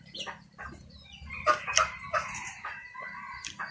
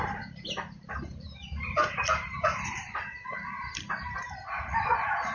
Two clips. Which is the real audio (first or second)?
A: first